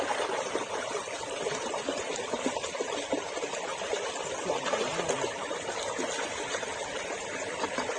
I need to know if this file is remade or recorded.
recorded